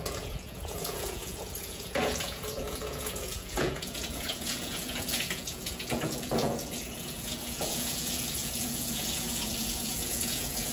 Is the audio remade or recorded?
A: remade